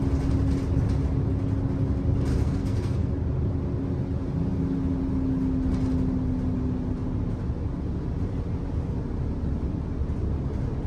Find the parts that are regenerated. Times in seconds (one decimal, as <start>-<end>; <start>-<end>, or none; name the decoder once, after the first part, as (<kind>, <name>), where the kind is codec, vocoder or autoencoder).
2.3-3.1 (codec, SNAC)